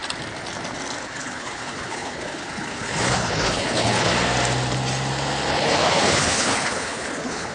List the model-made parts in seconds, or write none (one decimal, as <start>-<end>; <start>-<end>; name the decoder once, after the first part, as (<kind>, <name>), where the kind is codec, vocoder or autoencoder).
1.0-4.1 (codec, HILCodec); 5.5-7.5